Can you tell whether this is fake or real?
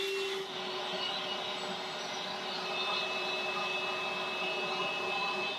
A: real